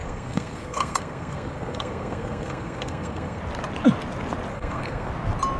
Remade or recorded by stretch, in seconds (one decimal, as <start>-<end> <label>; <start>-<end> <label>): 0.0-3.4 remade; 3.4-4.5 recorded; 4.5-5.1 remade; 5.1-5.6 recorded